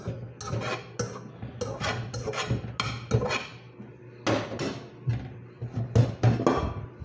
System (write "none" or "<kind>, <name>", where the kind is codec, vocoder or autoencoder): none